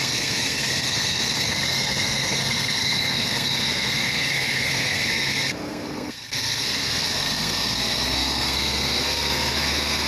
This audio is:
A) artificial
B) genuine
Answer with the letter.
A